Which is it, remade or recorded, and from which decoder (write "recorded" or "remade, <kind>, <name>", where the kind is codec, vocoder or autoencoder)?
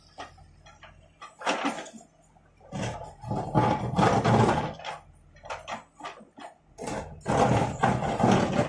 recorded